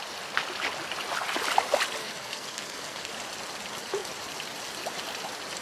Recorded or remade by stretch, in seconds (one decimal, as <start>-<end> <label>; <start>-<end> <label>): 0.0-2.0 recorded; 2.0-3.1 remade; 3.1-5.6 recorded